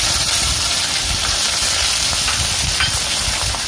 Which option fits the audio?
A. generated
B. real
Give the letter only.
B